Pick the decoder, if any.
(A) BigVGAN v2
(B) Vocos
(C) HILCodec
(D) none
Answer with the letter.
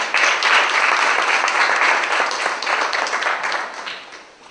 D